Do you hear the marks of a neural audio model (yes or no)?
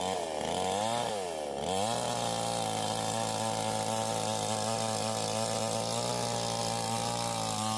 no